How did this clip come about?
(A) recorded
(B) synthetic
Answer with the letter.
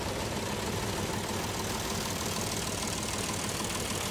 A